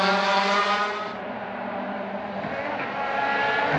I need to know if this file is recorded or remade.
recorded